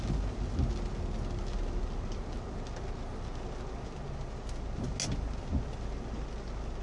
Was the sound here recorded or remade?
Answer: recorded